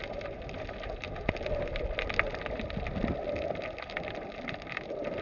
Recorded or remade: recorded